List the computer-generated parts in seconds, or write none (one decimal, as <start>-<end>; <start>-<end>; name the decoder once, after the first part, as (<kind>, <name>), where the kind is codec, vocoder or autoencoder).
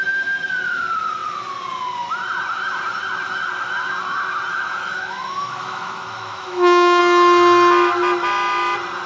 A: 4.5-7.0 (autoencoder, DAC-VAE)